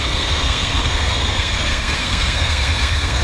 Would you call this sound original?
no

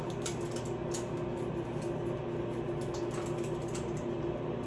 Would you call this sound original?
yes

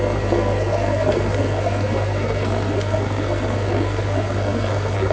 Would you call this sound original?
no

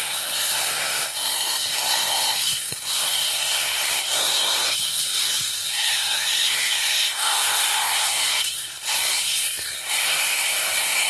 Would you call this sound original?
no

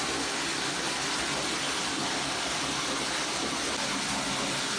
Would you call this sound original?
yes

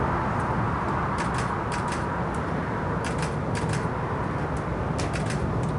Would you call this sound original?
yes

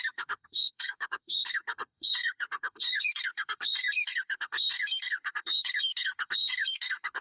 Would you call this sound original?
no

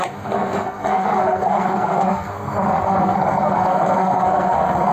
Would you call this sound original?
no